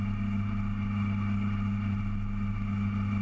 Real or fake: real